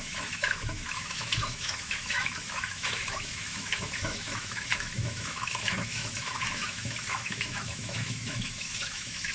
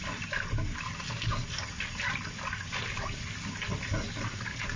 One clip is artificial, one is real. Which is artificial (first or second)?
first